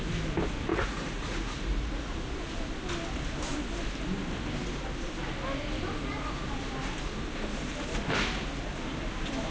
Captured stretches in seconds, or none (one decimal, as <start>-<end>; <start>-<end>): 0.0-0.7; 2.7-9.5